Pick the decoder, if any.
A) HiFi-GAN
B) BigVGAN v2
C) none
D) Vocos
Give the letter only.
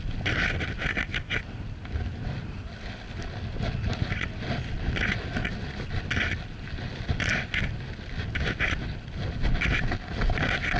C